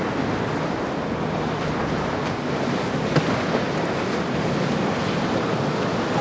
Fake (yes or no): no